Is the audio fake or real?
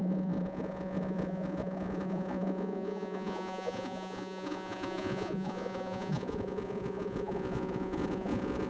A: fake